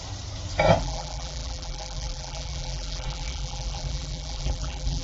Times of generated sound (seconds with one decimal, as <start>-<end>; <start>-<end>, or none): 0.8-5.0